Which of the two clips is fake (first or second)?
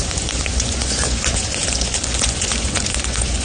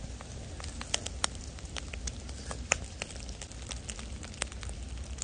first